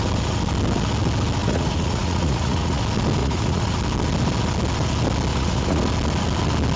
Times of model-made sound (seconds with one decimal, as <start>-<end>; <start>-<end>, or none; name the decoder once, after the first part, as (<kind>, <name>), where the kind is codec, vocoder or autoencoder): 1.4-2.8 (vocoder, Vocos); 3.2-3.8; 5.3-5.8